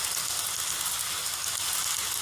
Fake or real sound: real